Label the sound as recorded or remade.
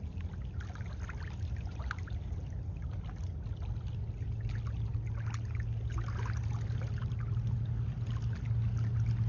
recorded